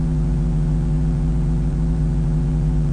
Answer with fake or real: fake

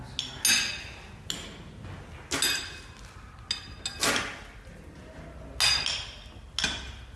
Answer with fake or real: real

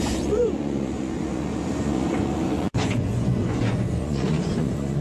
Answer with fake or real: fake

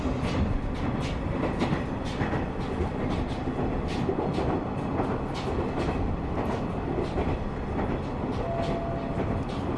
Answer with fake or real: real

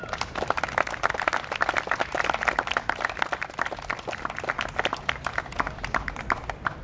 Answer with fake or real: real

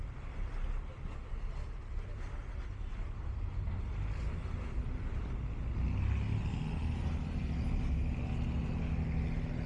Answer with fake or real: real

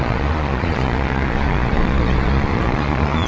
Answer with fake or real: fake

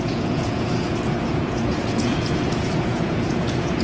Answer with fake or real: fake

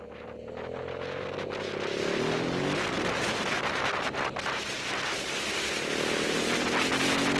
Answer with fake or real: real